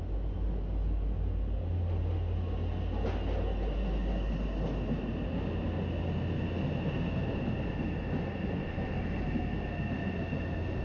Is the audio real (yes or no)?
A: yes